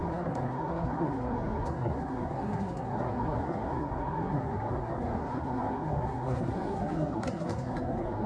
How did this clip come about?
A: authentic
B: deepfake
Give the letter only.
B